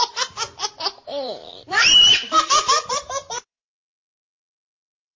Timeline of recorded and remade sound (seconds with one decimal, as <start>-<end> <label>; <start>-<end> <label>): 0.0-0.8 recorded; 0.8-5.2 remade